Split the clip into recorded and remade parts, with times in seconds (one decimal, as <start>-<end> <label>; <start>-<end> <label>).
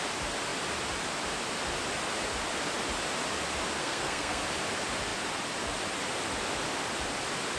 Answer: 0.0-3.8 recorded; 3.8-4.4 remade; 4.4-7.6 recorded